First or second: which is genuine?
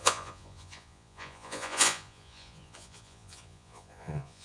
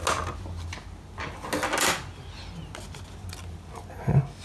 second